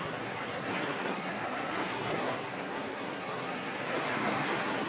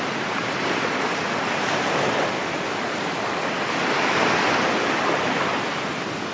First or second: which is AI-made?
first